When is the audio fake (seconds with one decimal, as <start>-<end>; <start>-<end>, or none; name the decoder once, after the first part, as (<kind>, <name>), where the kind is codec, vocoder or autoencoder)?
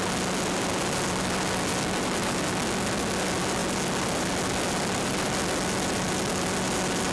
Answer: none